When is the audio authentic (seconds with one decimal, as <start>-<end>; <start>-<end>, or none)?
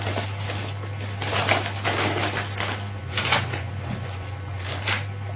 0.0-3.0; 4.8-5.4